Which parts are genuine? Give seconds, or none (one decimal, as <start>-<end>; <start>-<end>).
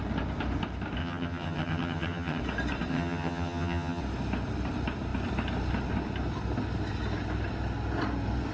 0.0-1.0; 2.4-2.9; 4.0-8.5